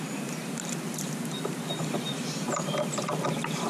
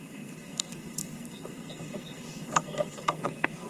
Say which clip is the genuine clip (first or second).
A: first